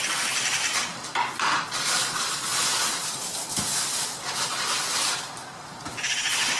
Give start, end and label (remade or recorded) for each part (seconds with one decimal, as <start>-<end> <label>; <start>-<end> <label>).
0.0-6.6 recorded